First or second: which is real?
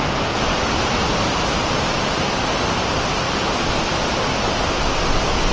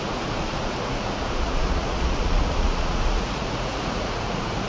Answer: first